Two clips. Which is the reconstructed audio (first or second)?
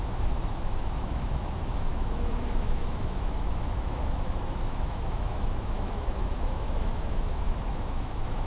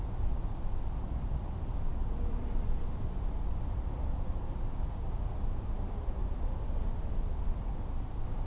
first